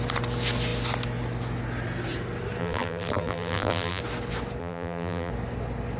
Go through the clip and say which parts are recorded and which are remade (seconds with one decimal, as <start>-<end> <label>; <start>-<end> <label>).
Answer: 0.0-2.6 recorded; 2.6-4.0 remade; 4.0-4.6 recorded; 4.6-5.3 remade; 5.3-6.0 recorded